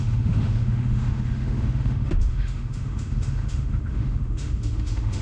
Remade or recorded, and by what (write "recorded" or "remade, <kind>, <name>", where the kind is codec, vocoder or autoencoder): remade, autoencoder, DAC-VAE